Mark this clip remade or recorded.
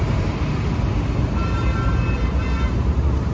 recorded